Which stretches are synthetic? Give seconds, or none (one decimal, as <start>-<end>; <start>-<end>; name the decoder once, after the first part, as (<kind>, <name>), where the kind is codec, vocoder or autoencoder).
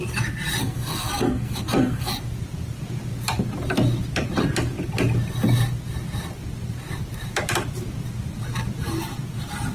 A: 0.6-2.1 (codec, SNAC)